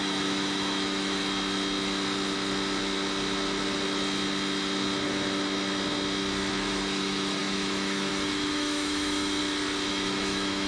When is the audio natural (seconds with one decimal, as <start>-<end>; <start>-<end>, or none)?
1.2-6.5; 9.4-9.9